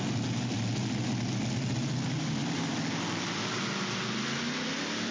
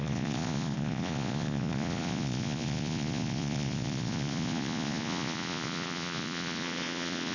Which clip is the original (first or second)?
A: first